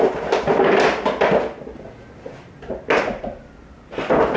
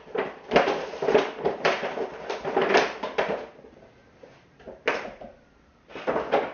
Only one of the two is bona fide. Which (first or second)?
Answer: first